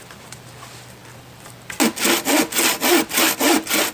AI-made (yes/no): no